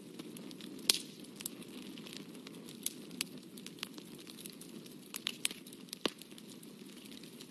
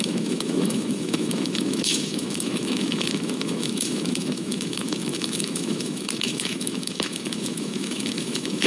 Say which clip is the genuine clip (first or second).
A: first